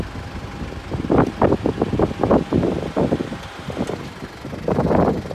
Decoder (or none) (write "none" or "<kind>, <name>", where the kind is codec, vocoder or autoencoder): none